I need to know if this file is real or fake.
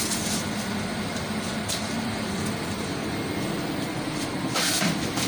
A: fake